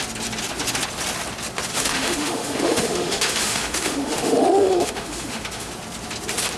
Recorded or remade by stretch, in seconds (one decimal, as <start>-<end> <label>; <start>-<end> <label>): 0.0-1.7 recorded; 1.7-5.7 remade; 5.7-6.6 recorded